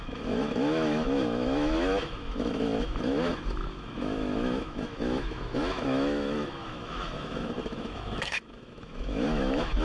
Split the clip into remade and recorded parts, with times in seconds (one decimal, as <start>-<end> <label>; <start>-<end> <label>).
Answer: 0.0-9.8 remade